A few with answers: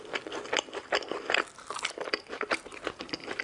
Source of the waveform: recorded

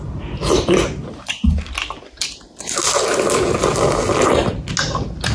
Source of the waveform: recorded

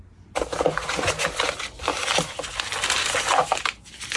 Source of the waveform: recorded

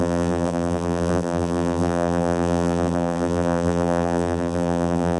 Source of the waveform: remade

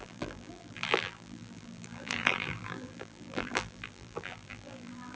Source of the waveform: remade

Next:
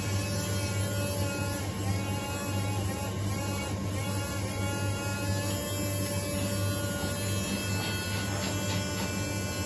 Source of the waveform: recorded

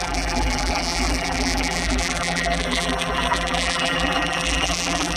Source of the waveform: remade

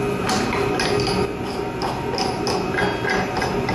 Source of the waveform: recorded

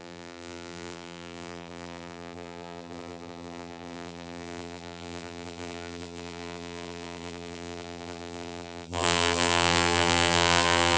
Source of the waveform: remade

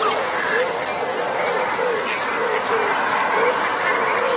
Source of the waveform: recorded